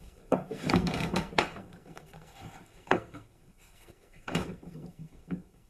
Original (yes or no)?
no